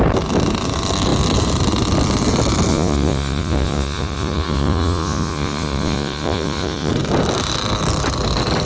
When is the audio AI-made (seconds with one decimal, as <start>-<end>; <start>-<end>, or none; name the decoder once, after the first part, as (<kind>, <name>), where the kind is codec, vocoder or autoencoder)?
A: 2.7-6.9 (vocoder, Vocos)